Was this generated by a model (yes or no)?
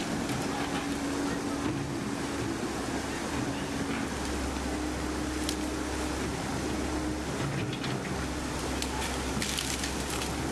no